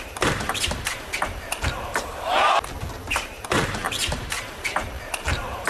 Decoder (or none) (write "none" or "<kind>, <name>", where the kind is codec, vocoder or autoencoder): vocoder, BigVGAN v2